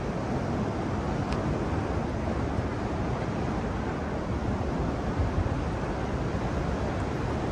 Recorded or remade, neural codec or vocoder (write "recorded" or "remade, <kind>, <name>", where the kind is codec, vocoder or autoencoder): recorded